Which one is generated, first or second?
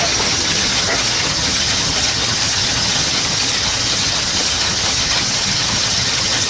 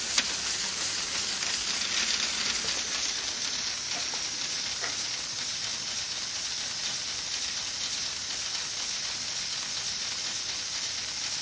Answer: first